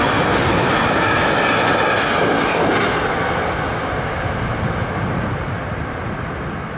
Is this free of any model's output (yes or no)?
yes